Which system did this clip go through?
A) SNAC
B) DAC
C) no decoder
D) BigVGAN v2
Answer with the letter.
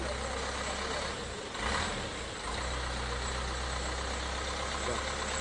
C